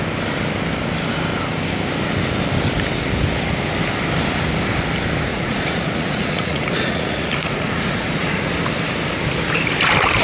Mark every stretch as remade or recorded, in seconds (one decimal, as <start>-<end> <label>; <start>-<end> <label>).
0.0-5.3 recorded; 5.3-8.5 remade; 8.5-10.2 recorded